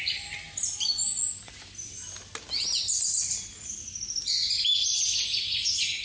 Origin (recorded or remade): recorded